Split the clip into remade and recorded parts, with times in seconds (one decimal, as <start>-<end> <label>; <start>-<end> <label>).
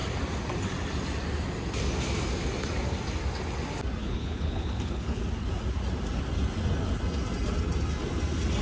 0.0-4.0 recorded; 4.0-5.2 remade; 5.2-8.6 recorded